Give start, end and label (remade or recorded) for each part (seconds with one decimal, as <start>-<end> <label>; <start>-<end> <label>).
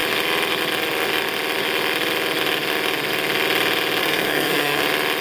0.0-4.0 recorded; 4.0-4.8 remade; 4.8-5.2 recorded